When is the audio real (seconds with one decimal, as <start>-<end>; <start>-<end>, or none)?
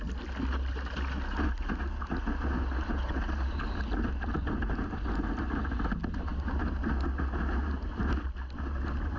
0.0-9.2